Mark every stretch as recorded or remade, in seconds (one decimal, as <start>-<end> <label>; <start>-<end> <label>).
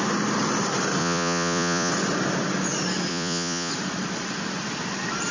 0.0-1.0 recorded; 1.0-1.9 remade; 1.9-3.1 recorded; 3.1-3.7 remade; 3.7-5.3 recorded